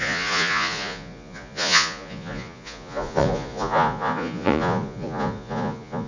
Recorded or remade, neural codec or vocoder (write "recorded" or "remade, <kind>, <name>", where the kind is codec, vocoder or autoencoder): remade, vocoder, Vocos